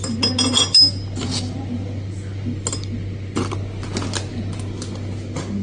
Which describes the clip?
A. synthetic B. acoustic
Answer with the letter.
B